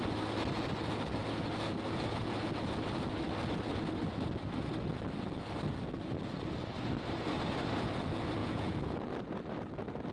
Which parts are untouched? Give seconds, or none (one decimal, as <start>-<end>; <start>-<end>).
0.0-8.4; 9.1-10.1